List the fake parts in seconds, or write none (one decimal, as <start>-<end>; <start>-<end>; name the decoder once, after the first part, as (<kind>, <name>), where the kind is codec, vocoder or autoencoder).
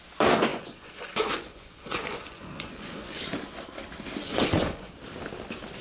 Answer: 0.5-3.2 (vocoder, Vocos); 4.2-4.9